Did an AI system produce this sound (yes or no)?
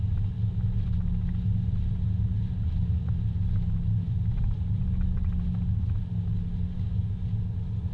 no